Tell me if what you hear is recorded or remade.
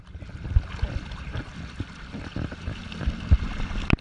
recorded